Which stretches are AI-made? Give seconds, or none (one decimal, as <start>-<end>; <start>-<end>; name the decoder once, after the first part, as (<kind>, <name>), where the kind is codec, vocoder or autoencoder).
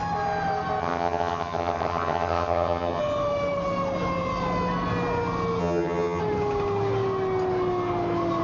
0.8-3.0 (vocoder, HiFi-GAN); 5.6-6.2